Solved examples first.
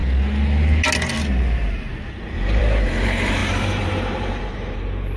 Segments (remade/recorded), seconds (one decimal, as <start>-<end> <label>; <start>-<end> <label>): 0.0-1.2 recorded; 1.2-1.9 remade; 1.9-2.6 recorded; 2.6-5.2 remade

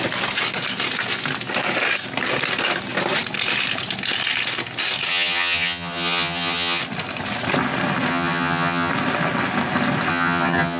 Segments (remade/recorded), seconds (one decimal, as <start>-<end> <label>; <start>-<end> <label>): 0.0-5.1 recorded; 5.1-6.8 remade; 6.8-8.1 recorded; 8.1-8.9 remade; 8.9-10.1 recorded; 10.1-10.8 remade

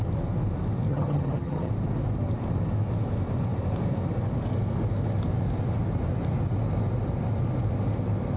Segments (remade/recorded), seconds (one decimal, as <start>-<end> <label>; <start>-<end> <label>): 0.0-0.9 recorded; 0.9-1.7 remade; 1.7-8.4 recorded

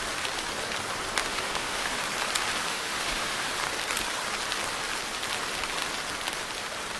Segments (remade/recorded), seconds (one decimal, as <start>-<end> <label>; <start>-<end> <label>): 0.0-1.2 recorded; 1.2-2.0 remade; 2.0-2.7 recorded; 2.7-3.5 remade; 3.5-7.0 recorded

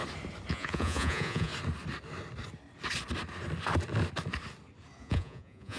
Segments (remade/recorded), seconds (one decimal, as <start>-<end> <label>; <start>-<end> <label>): 0.0-0.5 recorded; 0.5-1.5 remade; 1.5-5.0 recorded; 5.0-5.8 remade

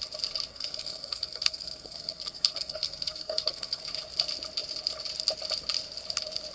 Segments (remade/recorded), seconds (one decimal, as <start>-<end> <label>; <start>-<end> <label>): 0.0-0.5 recorded; 0.5-3.8 remade; 3.8-6.5 recorded

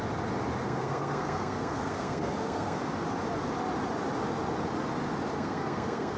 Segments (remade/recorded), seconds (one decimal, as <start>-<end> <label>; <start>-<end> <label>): 0.0-0.6 recorded; 0.6-2.8 remade; 2.8-5.3 recorded; 5.3-6.2 remade

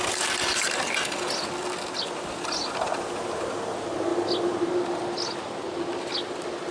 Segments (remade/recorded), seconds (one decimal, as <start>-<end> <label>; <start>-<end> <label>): 0.0-6.7 recorded